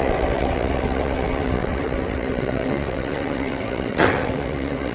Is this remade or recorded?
remade